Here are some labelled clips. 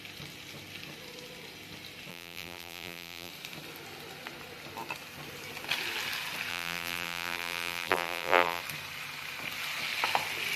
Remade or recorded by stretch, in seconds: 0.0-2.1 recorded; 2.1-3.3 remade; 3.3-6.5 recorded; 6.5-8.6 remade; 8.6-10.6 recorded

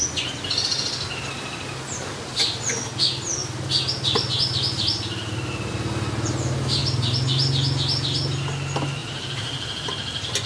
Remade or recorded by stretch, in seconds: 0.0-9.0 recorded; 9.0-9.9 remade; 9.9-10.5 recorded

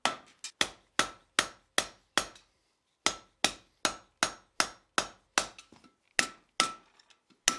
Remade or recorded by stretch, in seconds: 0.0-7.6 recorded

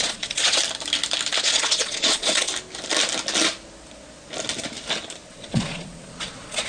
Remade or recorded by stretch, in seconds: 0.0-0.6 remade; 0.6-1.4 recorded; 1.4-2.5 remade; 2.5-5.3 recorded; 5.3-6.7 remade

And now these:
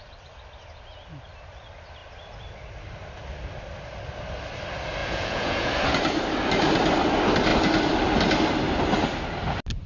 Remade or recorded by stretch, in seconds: 0.0-5.0 recorded; 5.0-5.7 remade; 5.7-9.9 recorded

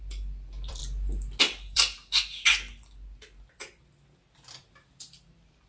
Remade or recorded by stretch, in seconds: 0.0-0.8 remade; 0.8-1.4 recorded; 1.4-2.0 remade; 2.0-5.0 recorded; 5.0-5.7 remade

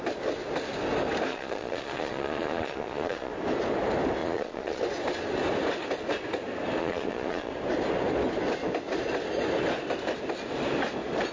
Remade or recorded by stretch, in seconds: 0.0-1.3 recorded; 1.3-3.3 remade; 3.3-4.2 recorded; 4.2-4.8 remade; 4.8-6.8 recorded; 6.8-7.5 remade; 7.5-11.3 recorded